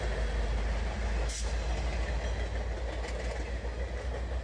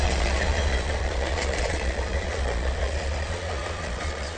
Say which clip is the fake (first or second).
second